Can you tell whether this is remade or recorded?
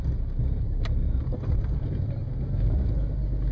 recorded